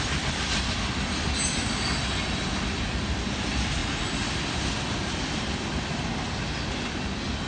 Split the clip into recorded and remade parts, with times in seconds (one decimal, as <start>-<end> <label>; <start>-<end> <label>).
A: 0.0-7.5 recorded